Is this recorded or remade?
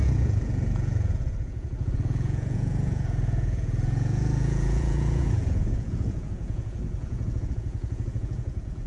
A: remade